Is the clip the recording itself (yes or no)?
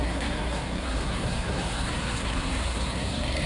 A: no